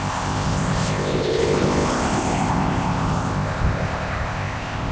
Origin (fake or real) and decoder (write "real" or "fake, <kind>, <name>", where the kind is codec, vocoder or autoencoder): fake, codec, ZipCodec